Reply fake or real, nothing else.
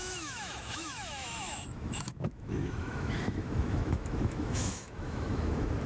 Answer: fake